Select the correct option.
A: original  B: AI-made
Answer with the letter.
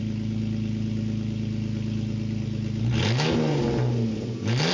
A